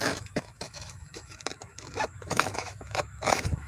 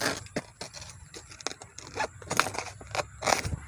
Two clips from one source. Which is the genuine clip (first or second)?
second